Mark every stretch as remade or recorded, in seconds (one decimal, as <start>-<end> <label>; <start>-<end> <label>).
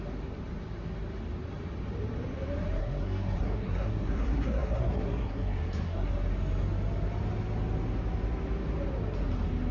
0.0-2.8 recorded; 2.8-6.1 remade; 6.1-9.7 recorded